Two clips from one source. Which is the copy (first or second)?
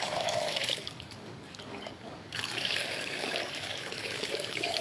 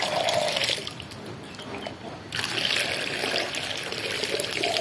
first